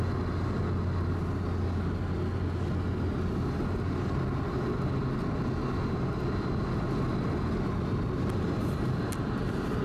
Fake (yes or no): no